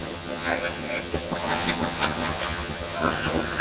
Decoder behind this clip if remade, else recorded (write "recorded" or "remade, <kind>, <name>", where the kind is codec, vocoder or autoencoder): remade, vocoder, HiFi-GAN